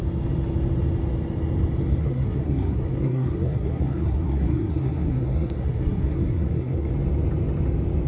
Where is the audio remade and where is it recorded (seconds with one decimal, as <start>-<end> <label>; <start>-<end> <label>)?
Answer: 0.0-2.0 recorded; 2.0-6.9 remade; 6.9-8.1 recorded